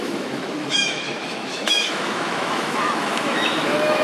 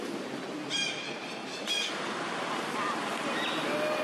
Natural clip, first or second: second